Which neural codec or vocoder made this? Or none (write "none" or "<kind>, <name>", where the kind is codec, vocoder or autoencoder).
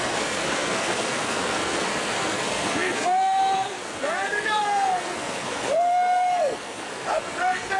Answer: codec, SNAC